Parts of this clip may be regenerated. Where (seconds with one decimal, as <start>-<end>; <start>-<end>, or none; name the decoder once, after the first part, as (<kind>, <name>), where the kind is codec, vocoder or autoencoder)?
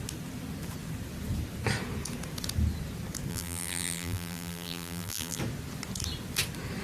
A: 3.3-5.4 (vocoder, BigVGAN v2)